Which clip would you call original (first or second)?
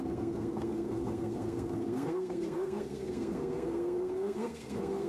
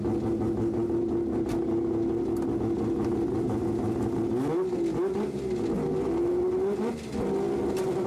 second